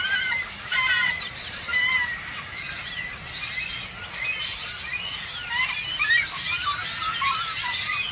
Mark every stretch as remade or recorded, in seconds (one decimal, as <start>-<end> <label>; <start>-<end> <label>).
0.0-8.1 recorded